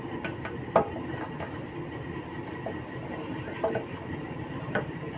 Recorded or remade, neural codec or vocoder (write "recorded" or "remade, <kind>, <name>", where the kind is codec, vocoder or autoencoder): recorded